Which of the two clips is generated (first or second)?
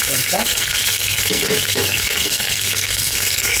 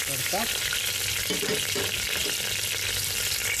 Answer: first